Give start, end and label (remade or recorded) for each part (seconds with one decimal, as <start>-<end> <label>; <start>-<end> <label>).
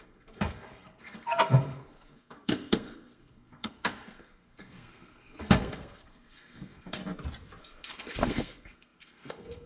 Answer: 0.0-7.0 remade; 7.0-7.6 recorded; 7.6-9.7 remade